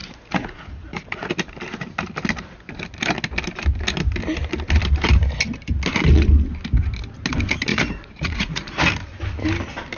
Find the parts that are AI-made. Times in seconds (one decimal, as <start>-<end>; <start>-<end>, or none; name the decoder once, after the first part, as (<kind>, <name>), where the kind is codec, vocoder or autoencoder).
0.0-1.3 (vocoder, Vocos); 7.7-8.8